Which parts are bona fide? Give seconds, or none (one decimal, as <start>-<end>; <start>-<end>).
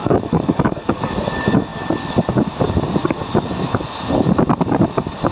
1.0-5.3